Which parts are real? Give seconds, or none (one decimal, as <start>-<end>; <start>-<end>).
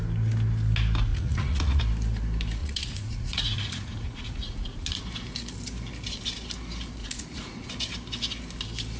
0.0-1.1; 1.8-2.6; 5.0-7.0; 7.7-9.0